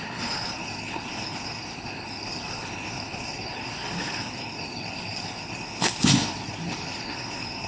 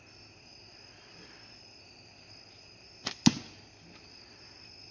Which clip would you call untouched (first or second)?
second